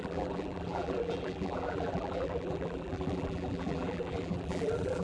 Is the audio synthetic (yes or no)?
yes